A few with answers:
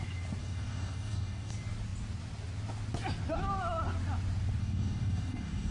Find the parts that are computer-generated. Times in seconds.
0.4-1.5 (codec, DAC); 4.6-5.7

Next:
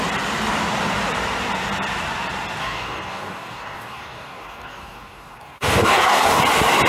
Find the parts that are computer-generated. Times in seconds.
2.6-6.4 (codec, DAC)